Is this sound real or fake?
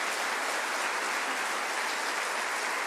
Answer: real